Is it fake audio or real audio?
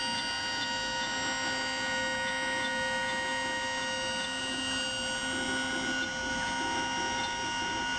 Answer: real